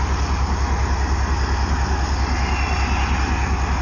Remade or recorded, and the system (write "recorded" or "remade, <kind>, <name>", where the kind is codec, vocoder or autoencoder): recorded